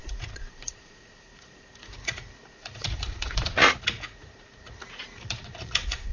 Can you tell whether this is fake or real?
fake